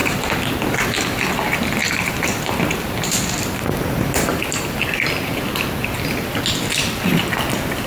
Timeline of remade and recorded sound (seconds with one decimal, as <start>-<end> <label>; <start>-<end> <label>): 0.0-1.8 recorded; 1.8-4.4 remade; 4.4-7.9 recorded